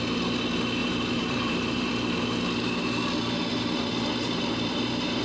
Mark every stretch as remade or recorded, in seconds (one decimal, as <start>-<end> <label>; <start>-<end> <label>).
0.0-0.8 recorded; 0.8-1.9 remade; 1.9-3.5 recorded; 3.5-5.2 remade